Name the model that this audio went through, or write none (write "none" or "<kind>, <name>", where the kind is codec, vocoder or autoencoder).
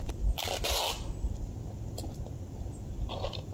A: none